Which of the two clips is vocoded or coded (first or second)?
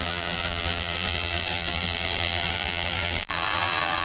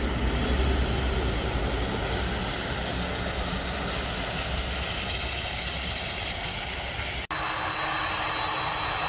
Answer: first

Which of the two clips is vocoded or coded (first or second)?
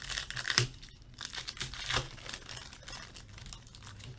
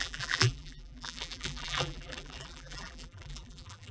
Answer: second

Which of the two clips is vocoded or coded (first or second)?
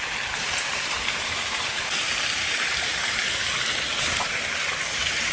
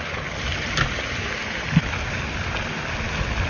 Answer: first